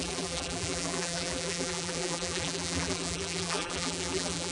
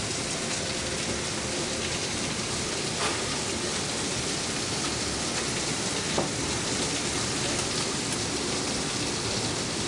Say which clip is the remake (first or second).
first